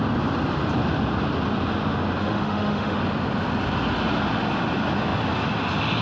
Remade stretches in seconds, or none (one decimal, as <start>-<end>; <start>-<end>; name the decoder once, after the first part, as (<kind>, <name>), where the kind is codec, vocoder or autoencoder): 2.2-3.0 (autoencoder, DAC-VAE)